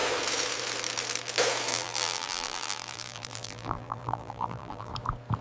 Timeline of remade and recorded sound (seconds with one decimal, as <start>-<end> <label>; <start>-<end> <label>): 0.0-1.7 recorded; 1.7-4.9 remade; 4.9-5.4 recorded